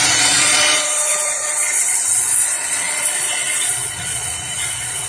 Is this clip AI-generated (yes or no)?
yes